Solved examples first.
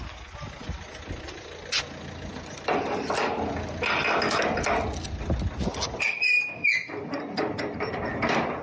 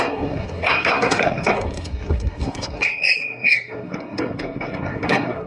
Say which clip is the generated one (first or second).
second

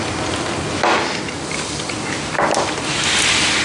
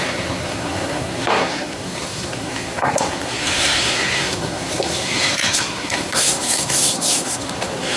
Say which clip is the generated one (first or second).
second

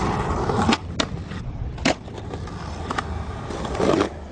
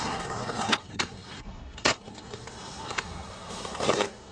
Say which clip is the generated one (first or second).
second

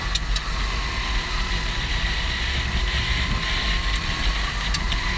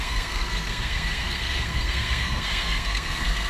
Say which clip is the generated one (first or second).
second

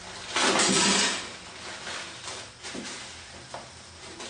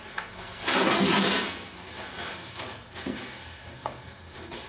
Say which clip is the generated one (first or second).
second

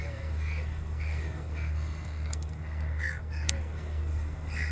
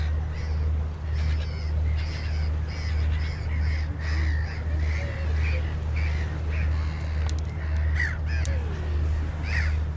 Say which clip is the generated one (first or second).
first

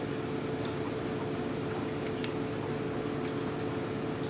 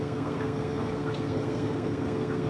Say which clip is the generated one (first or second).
second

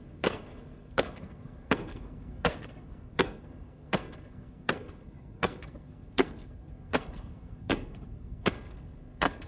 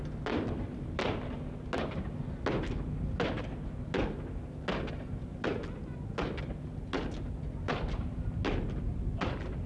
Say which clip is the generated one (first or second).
first